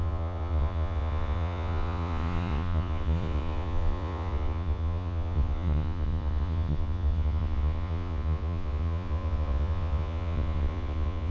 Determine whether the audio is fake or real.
fake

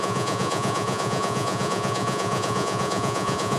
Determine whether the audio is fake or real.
fake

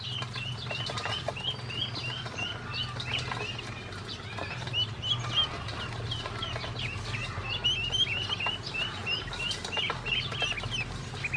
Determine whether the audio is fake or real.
real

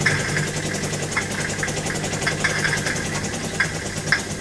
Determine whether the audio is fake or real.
real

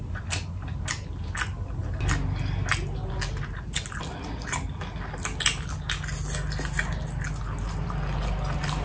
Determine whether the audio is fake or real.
real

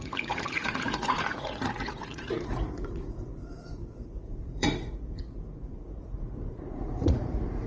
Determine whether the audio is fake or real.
fake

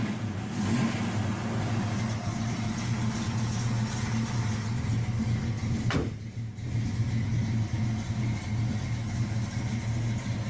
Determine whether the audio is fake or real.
real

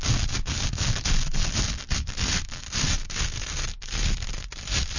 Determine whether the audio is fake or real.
real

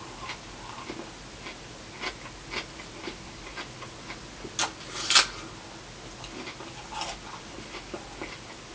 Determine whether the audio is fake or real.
real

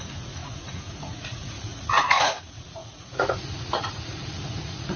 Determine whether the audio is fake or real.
fake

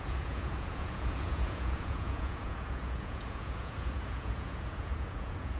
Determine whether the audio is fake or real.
fake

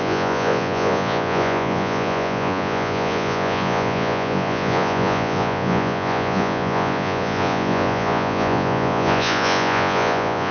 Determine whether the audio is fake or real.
fake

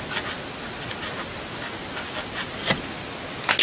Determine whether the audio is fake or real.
real